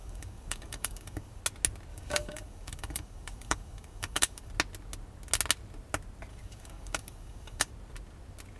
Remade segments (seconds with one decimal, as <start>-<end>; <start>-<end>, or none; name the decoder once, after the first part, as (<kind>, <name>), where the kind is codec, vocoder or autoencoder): 0.0-1.4 (codec, DAC); 1.9-4.5; 6.3-7.7